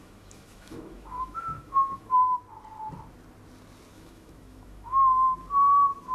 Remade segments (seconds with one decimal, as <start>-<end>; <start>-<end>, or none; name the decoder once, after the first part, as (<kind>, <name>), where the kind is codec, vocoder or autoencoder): 0.0-2.4 (autoencoder, DAC-VAE); 3.9-5.3